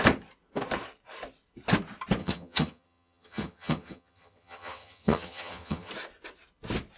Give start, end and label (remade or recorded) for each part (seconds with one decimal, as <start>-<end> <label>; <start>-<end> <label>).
0.0-2.2 recorded; 2.2-5.9 remade; 5.9-7.0 recorded

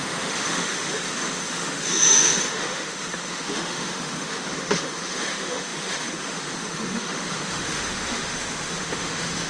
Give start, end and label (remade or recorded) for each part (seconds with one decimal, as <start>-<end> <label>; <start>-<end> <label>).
0.0-9.5 remade

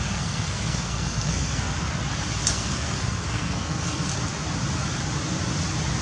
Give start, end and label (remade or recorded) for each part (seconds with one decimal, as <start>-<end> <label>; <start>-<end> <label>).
0.0-1.9 remade; 1.9-2.4 recorded; 2.4-4.1 remade; 4.1-6.0 recorded

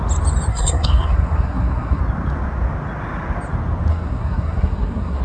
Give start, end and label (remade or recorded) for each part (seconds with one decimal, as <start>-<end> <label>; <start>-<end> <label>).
0.0-0.5 recorded; 0.5-2.0 remade; 2.0-3.9 recorded; 3.9-5.2 remade

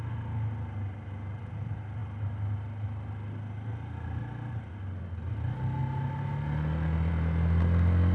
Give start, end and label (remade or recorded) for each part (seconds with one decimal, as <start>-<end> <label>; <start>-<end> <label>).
0.0-8.1 recorded

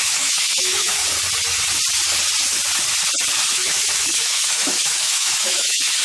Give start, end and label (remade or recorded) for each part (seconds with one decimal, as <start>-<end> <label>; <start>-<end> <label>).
0.0-1.0 remade; 1.0-3.5 recorded; 3.5-6.0 remade

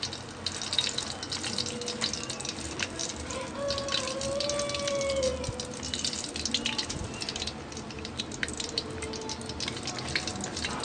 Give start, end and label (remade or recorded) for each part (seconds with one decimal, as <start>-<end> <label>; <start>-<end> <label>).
0.0-3.0 recorded; 3.0-3.5 remade; 3.5-10.8 recorded

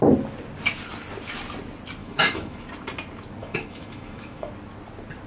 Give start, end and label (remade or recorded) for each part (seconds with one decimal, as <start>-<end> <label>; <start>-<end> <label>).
0.0-2.0 recorded; 2.0-2.7 remade; 2.7-3.4 recorded; 3.4-4.5 remade; 4.5-5.3 recorded